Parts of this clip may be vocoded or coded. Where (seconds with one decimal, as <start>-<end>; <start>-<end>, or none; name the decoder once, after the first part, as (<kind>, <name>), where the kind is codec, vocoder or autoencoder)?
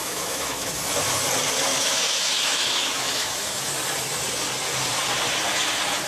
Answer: 0.0-0.7 (autoencoder, DAC-VAE); 1.7-3.7